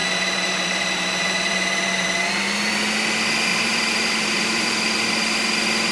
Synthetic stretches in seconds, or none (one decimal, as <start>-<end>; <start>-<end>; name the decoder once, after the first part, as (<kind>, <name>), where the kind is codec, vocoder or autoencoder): 0.0-2.7 (vocoder, BigVGAN v2); 3.5-4.7